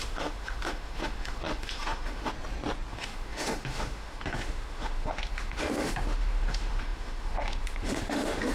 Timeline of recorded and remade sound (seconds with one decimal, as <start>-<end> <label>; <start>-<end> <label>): 0.0-2.3 remade; 2.3-2.9 recorded; 2.9-8.5 remade